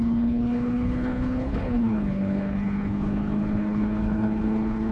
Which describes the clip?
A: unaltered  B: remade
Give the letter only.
B